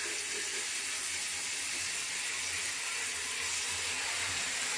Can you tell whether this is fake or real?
real